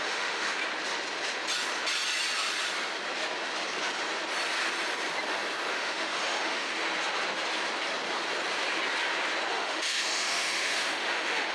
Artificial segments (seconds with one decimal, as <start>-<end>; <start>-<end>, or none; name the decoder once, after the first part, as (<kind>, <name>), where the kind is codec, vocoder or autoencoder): 0.0-0.6 (autoencoder, DAC-VAE); 5.7-6.7; 9.5-11.5